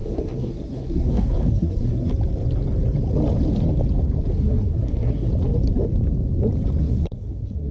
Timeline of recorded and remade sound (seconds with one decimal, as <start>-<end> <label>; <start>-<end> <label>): 0.0-2.1 remade; 2.1-4.3 recorded; 4.3-5.3 remade; 5.3-6.8 recorded; 6.8-7.7 remade